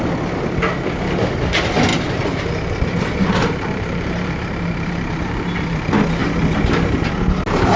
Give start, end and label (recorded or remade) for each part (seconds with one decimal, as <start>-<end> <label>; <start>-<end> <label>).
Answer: 0.0-1.9 recorded; 1.9-5.8 remade; 5.8-6.2 recorded; 6.2-7.0 remade; 7.0-7.8 recorded